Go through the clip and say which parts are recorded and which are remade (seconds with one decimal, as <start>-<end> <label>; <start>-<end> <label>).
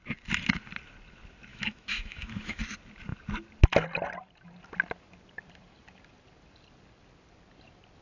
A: 0.0-1.5 recorded; 1.5-2.6 remade; 2.6-8.0 recorded